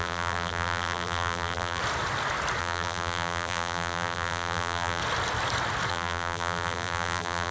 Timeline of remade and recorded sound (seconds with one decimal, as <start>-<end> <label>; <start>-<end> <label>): 0.0-1.8 remade; 1.8-2.6 recorded; 2.6-5.0 remade; 5.0-5.9 recorded; 5.9-7.5 remade

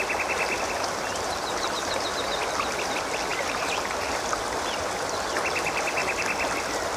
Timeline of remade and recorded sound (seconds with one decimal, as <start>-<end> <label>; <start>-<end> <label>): 0.0-0.9 recorded; 0.9-2.4 remade; 2.4-3.3 recorded; 3.3-3.8 remade; 3.8-7.0 recorded